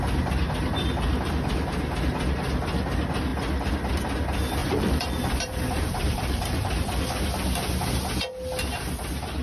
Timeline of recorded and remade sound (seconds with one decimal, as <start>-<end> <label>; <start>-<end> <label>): 0.0-4.6 recorded; 4.6-6.9 remade; 6.9-9.4 recorded